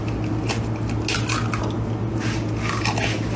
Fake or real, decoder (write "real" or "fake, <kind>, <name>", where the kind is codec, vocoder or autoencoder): real